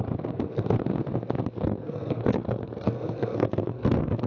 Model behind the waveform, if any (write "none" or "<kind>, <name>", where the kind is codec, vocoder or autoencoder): codec, SNAC